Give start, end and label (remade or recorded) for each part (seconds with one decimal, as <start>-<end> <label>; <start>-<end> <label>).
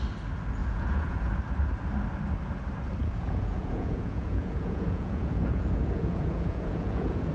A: 0.0-0.6 recorded; 0.6-1.4 remade; 1.4-3.0 recorded; 3.0-7.3 remade